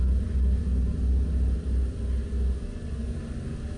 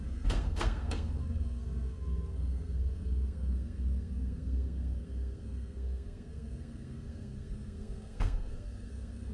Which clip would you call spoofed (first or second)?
second